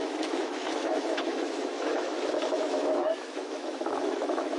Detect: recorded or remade remade